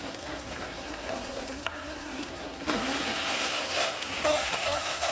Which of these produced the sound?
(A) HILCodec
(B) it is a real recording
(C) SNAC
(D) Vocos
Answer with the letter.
C